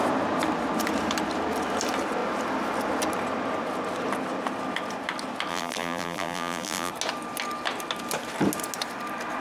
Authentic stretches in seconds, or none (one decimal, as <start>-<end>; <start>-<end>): 0.0-5.5; 6.9-9.4